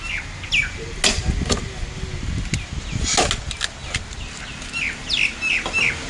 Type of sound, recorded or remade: recorded